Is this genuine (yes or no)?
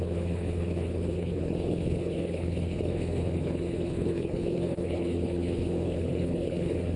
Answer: no